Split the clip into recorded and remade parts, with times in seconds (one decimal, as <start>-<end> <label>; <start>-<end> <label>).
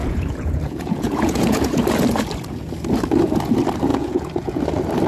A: 0.0-1.8 remade; 1.8-3.9 recorded; 3.9-4.6 remade; 4.6-5.1 recorded